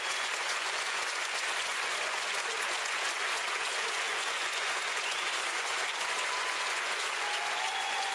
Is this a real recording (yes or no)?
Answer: no